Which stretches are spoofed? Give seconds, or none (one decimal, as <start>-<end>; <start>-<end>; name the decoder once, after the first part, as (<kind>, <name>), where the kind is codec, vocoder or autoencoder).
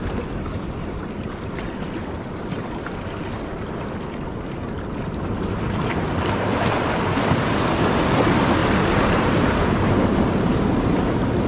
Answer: none